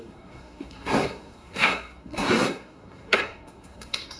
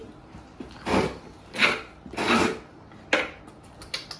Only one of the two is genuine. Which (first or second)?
second